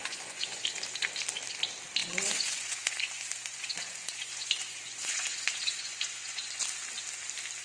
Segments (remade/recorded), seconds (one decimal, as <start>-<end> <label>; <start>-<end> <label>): 0.0-0.6 remade; 0.6-2.0 recorded; 2.0-6.6 remade; 6.6-7.6 recorded